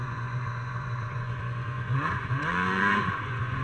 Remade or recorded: remade